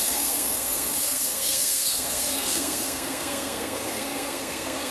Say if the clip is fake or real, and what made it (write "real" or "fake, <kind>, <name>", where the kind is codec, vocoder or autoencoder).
fake, codec, SNAC